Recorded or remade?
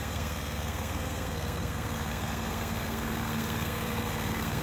remade